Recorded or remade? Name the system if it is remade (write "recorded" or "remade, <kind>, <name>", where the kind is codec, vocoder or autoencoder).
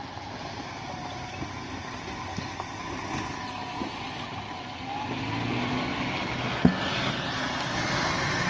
recorded